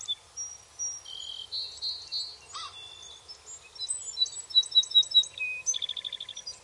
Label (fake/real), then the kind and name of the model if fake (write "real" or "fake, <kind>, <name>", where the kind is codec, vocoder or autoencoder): real